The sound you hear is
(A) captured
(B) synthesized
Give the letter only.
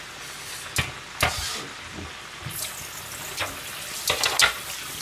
A